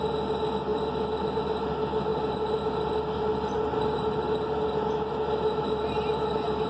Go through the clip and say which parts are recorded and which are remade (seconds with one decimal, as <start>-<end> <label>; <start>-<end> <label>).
0.0-6.7 recorded

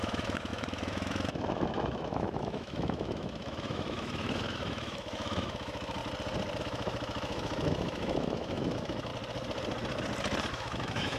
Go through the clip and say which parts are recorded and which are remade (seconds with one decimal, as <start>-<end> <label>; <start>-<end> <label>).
0.0-6.0 remade; 6.0-6.6 recorded; 6.6-9.1 remade; 9.1-10.5 recorded; 10.5-11.2 remade

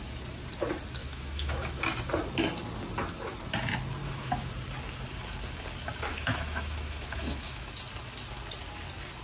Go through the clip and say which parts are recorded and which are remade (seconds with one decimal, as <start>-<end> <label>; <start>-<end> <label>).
0.0-1.0 recorded; 1.0-1.8 remade; 1.8-4.0 recorded; 4.0-4.5 remade; 4.5-6.1 recorded; 6.1-7.7 remade; 7.7-9.2 recorded

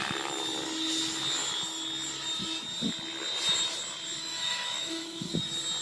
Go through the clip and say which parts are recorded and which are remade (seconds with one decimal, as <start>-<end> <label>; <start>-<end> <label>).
0.0-4.2 recorded; 4.2-5.3 remade; 5.3-5.8 recorded

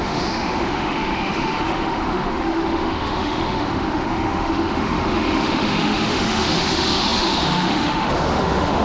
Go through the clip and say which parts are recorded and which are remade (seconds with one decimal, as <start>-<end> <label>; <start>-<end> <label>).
0.0-8.8 remade

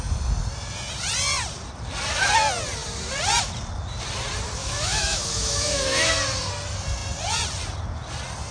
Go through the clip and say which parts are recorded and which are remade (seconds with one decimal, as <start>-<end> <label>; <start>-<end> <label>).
0.0-4.6 recorded; 4.6-6.1 remade; 6.1-8.5 recorded

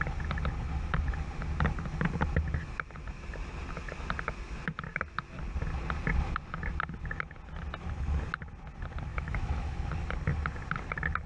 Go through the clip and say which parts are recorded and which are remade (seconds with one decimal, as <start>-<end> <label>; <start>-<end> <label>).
0.0-9.1 recorded; 9.1-9.9 remade; 9.9-11.3 recorded